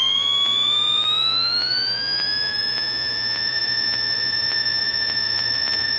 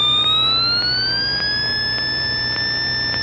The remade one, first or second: first